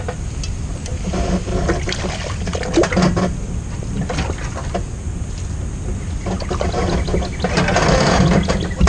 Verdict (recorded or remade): recorded